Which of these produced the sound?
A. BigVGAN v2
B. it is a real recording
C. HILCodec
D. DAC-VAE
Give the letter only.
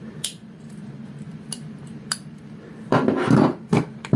A